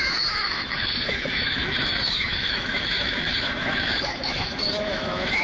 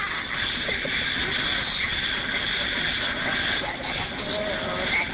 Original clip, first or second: second